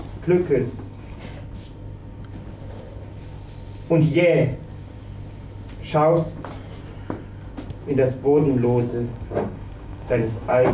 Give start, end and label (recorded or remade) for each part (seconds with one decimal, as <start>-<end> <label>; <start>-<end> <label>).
0.0-0.6 recorded; 0.6-1.2 remade; 1.2-9.1 recorded; 9.1-10.7 remade